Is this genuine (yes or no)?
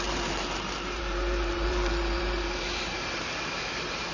no